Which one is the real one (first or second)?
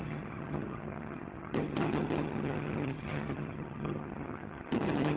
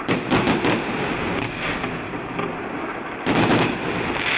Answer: second